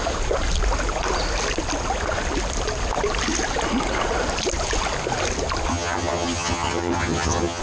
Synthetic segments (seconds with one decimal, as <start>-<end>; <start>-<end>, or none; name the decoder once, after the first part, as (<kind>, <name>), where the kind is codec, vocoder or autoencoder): 5.7-7.6 (vocoder, HiFi-GAN)